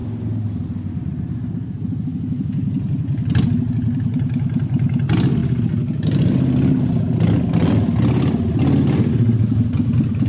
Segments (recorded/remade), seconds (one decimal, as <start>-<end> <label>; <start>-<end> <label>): 0.0-10.3 recorded